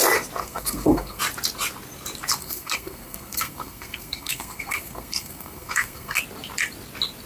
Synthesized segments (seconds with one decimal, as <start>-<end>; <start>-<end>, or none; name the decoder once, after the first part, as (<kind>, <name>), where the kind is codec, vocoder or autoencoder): 0.4-1.2 (codec, SNAC); 2.4-6.2